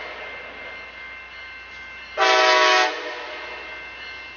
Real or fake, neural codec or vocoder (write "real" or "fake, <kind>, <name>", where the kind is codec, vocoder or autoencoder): real